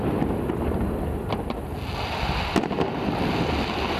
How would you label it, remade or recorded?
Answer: recorded